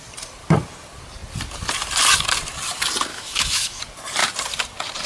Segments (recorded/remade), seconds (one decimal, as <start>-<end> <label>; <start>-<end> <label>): 0.0-3.1 recorded; 3.1-3.8 remade; 3.8-5.1 recorded